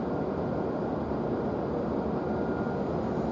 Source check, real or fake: real